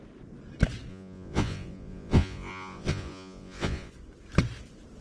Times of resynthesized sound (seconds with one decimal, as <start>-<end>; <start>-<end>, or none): 0.9-3.9